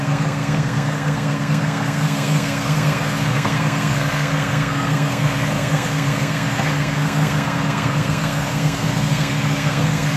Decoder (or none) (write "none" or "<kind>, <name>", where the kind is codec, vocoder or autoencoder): codec, SNAC